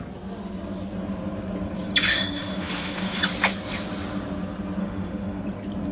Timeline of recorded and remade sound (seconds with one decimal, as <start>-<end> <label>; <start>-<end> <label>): 0.0-2.1 recorded; 2.1-3.2 remade; 3.2-4.8 recorded; 4.8-5.4 remade; 5.4-5.9 recorded